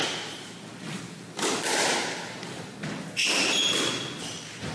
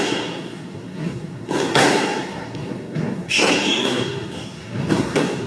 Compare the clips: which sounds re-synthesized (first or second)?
second